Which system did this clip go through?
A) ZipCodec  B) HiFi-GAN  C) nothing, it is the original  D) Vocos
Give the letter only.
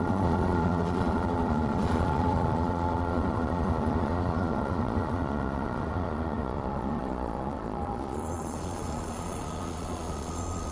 D